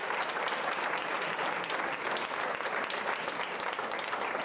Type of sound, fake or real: real